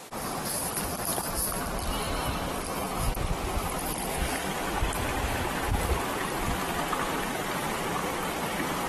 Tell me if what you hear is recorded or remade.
recorded